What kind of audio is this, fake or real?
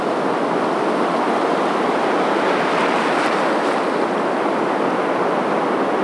real